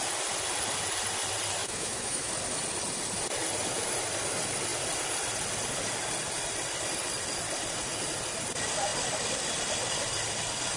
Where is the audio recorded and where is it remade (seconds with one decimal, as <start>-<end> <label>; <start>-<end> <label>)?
0.0-1.6 recorded; 1.6-2.3 remade; 2.3-10.8 recorded